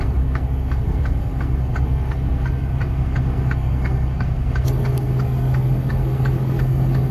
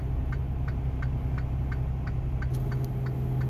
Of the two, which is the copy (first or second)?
first